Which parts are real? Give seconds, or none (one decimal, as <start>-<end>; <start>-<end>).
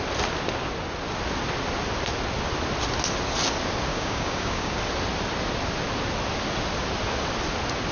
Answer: 0.0-3.9; 4.8-7.9